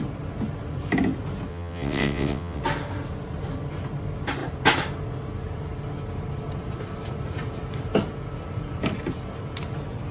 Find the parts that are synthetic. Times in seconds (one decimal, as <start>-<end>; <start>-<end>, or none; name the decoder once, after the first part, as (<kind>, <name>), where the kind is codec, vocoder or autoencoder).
1.5-2.6 (vocoder, WaveNeXt)